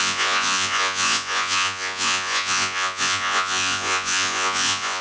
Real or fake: fake